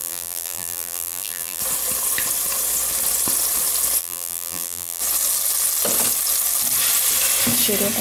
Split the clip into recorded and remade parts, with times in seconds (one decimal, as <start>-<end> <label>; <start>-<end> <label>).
0.0-1.6 remade; 1.6-4.0 recorded; 4.0-5.0 remade; 5.0-8.0 recorded